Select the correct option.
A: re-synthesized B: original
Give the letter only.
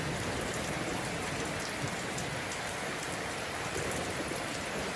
B